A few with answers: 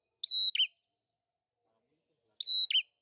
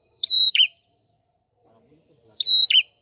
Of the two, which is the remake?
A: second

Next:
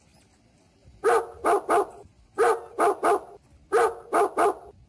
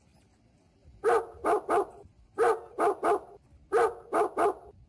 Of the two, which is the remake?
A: second